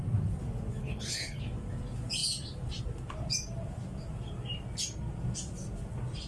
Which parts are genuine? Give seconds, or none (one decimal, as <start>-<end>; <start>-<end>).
0.0-0.8; 1.4-6.3